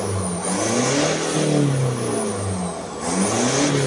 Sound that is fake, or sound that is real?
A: real